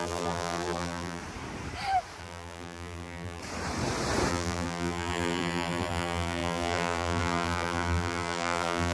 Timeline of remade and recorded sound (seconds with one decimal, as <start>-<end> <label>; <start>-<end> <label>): 0.0-1.2 remade; 1.2-2.2 recorded; 2.2-3.4 remade; 3.4-4.3 recorded; 4.3-8.9 remade